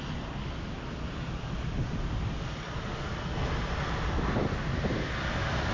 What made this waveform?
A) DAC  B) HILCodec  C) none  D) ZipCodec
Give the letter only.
C